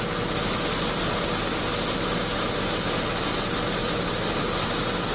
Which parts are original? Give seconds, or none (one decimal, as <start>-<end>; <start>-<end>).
0.0-5.1